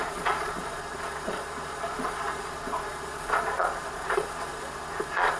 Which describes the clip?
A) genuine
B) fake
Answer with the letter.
B